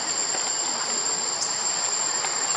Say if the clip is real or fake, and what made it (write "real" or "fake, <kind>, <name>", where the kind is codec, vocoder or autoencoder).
real